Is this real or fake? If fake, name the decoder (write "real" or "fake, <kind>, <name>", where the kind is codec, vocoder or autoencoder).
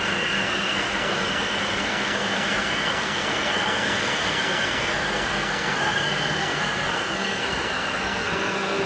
fake, codec, SNAC